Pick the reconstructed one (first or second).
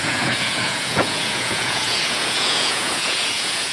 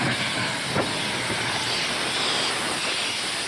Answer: first